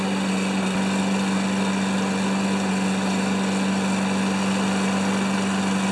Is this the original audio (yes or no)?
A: yes